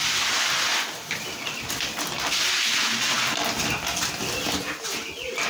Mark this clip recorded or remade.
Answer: recorded